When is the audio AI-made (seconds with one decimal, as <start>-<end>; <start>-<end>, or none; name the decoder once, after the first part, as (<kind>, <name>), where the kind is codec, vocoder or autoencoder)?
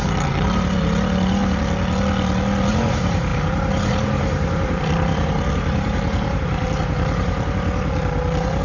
0.0-1.4 (vocoder, BigVGAN v2); 2.7-8.6